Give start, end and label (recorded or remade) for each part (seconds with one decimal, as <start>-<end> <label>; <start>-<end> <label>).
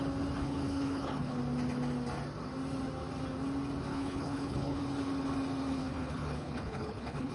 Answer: 0.0-0.4 recorded; 0.4-1.4 remade; 1.4-3.9 recorded; 3.9-4.8 remade; 4.8-5.8 recorded; 5.8-7.3 remade